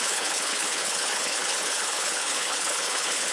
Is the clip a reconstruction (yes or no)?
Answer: yes